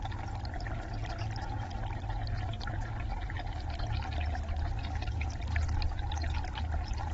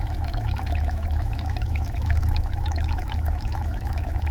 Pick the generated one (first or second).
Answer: second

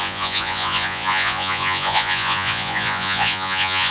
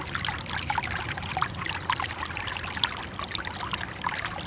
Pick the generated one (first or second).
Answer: first